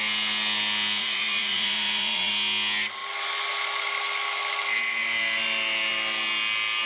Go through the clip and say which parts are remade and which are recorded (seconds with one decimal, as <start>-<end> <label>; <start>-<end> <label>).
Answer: 0.0-1.0 recorded; 1.0-2.3 remade; 2.3-6.9 recorded